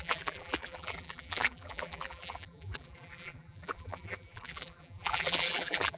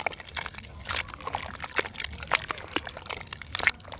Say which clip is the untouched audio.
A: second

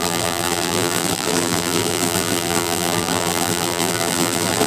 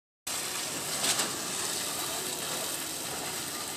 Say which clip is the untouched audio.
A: second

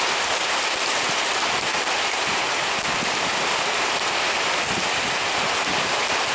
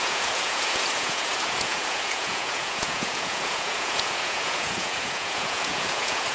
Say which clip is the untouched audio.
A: first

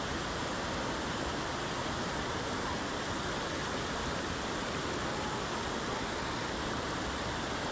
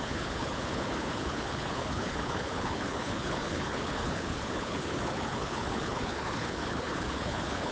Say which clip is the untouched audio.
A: first